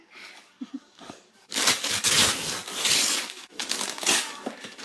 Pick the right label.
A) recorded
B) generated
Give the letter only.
B